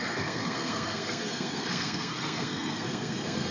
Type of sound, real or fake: fake